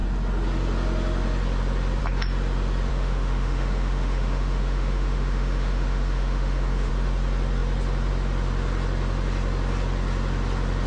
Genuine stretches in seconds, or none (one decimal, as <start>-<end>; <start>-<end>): 0.0-2.9; 6.9-10.9